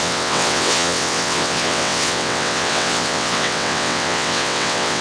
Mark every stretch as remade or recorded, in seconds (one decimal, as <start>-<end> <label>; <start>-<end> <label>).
0.0-5.0 remade